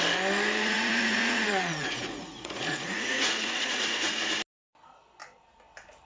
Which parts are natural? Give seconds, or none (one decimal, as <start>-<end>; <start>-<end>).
0.0-0.6; 4.3-6.1